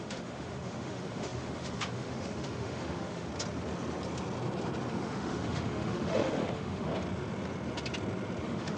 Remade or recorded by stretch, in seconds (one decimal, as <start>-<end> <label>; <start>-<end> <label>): 0.0-3.3 remade; 3.3-4.9 recorded; 4.9-6.9 remade; 6.9-8.4 recorded; 8.4-8.8 remade

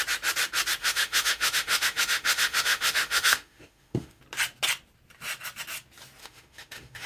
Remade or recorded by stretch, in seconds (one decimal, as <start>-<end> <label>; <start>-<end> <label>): 0.0-0.8 recorded; 0.8-4.2 remade; 4.2-6.2 recorded; 6.2-7.1 remade

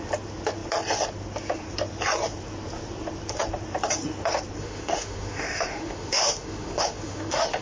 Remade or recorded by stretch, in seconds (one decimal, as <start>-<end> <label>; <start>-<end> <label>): 0.0-4.6 recorded; 4.6-7.6 remade

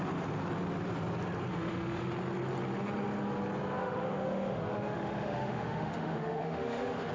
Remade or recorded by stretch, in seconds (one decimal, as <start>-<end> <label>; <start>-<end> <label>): 0.0-1.5 recorded; 1.5-2.1 remade; 2.1-3.8 recorded; 3.8-7.1 remade

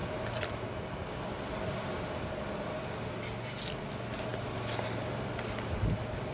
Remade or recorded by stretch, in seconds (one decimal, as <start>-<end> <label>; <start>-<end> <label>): 0.0-6.3 recorded